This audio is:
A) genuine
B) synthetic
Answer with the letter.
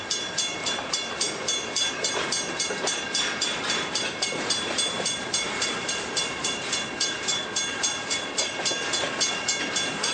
B